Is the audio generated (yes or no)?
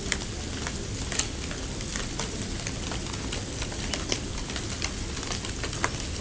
no